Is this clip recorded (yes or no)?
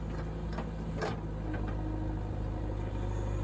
yes